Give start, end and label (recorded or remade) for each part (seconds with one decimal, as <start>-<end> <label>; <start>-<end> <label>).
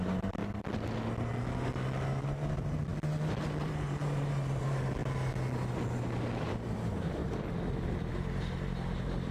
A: 0.0-0.4 remade; 0.4-2.2 recorded; 2.2-2.9 remade; 2.9-3.6 recorded; 3.6-5.0 remade; 5.0-6.4 recorded; 6.4-7.2 remade; 7.2-8.1 recorded; 8.1-9.3 remade